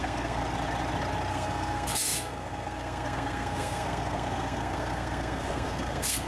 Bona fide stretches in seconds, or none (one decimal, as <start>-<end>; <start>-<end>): 0.4-1.3